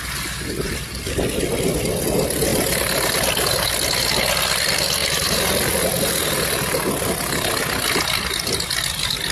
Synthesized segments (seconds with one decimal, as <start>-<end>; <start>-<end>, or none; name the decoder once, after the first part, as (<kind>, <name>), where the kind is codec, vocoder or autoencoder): none